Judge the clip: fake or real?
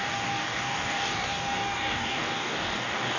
fake